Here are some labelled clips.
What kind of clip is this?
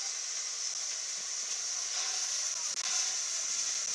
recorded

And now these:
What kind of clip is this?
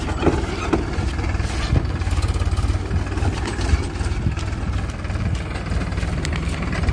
recorded